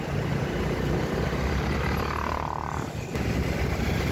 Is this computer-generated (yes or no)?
no